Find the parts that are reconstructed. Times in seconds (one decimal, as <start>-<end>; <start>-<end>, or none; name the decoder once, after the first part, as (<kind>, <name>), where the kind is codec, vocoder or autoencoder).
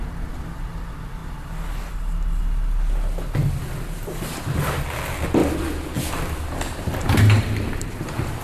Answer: none